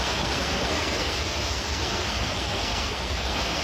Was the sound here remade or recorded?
remade